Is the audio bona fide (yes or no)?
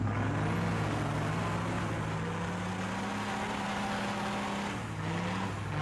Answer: yes